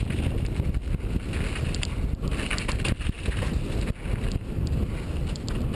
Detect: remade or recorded recorded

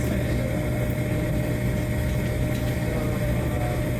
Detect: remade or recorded recorded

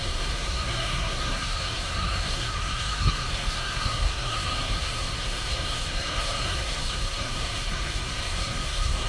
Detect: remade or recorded remade